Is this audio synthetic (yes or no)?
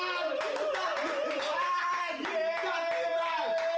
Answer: no